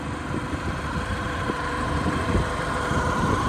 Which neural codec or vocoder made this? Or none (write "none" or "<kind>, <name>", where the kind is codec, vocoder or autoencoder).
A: vocoder, BigVGAN v2